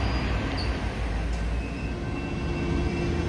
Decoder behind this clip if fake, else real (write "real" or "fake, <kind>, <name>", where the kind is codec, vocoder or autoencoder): real